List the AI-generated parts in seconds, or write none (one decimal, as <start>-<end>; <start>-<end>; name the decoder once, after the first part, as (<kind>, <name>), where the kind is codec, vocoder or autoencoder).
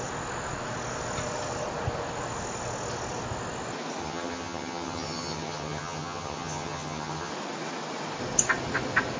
4.0-7.3 (vocoder, HiFi-GAN)